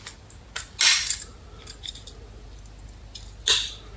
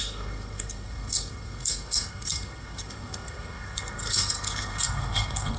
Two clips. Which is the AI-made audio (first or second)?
second